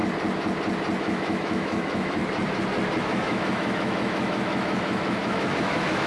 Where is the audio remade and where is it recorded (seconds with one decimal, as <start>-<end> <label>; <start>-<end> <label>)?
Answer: 0.0-1.0 recorded; 1.0-2.2 remade; 2.2-3.0 recorded; 3.0-6.1 remade